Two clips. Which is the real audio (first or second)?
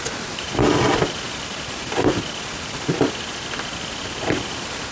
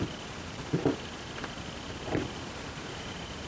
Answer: first